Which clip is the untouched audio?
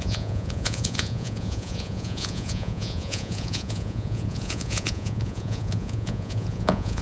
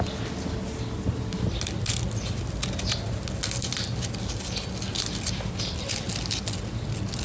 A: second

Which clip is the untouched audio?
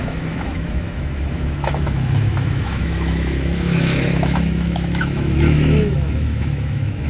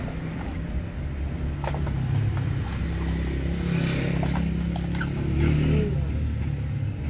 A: second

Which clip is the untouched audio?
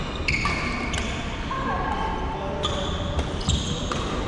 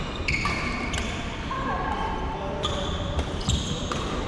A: first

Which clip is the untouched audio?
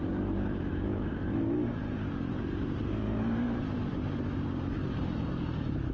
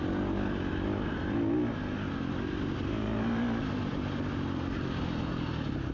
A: second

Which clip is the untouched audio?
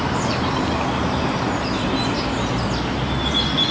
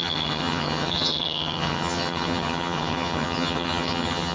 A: first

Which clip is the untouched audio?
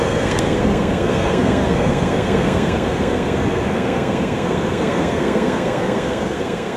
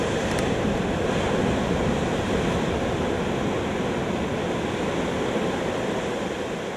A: second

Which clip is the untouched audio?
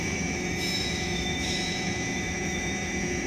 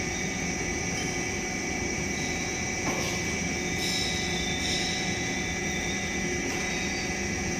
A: second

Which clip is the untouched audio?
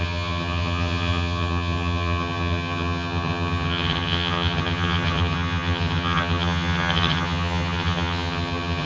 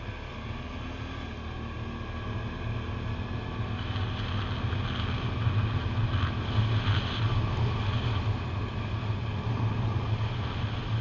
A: second